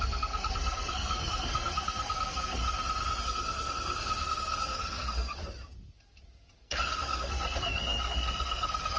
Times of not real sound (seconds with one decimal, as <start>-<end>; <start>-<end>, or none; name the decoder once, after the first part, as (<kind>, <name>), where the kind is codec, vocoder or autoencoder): 0.0-2.6 (codec, SNAC); 3.2-5.4; 6.6-9.0